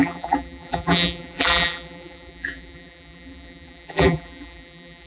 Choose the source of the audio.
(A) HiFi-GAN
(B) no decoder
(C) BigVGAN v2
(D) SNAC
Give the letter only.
C